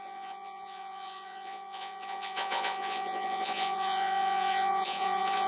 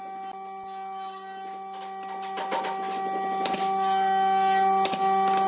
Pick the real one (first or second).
second